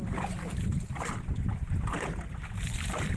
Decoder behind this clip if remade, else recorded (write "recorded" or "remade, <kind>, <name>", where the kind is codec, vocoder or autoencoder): recorded